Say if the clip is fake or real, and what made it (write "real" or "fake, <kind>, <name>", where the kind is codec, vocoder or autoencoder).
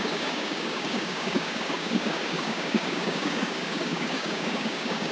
fake, codec, DAC